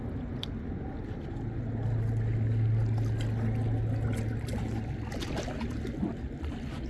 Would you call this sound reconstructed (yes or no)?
no